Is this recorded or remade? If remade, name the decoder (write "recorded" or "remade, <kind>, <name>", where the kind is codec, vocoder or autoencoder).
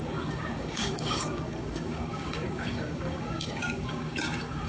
remade, codec, DAC